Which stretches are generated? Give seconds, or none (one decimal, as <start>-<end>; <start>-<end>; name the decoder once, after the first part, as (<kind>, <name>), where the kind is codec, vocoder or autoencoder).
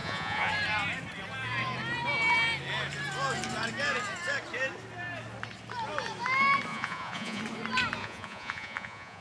0.0-0.5 (vocoder, Vocos); 6.7-7.4; 8.0-9.2